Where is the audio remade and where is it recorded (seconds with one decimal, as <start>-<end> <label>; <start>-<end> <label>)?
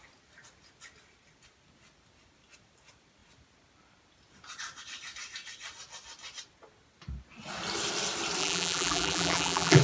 0.0-8.4 recorded; 8.4-9.8 remade